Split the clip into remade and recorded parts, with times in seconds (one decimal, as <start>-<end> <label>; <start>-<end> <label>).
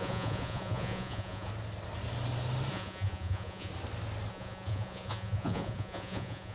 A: 0.0-1.5 remade; 1.5-2.7 recorded; 2.7-3.7 remade; 3.7-4.3 recorded; 4.3-6.5 remade